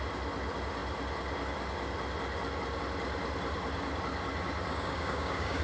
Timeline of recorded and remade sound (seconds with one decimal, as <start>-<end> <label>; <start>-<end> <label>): 0.0-4.7 recorded; 4.7-5.6 remade